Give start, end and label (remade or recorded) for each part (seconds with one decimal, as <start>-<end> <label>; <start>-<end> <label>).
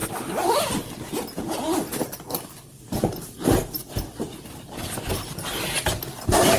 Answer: 0.0-6.6 recorded